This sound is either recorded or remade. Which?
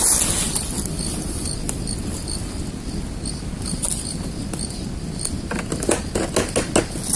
recorded